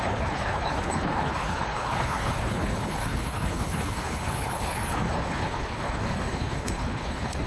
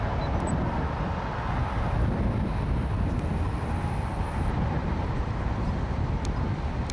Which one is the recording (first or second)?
second